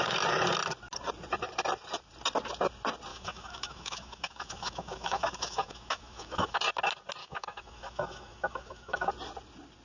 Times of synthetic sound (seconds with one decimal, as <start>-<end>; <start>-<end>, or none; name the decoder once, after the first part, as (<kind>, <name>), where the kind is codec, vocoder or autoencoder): 3.1-6.6 (autoencoder, DAC-VAE); 7.2-9.1